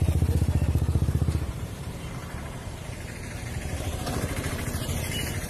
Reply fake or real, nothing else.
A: fake